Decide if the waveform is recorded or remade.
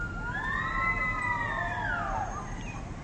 recorded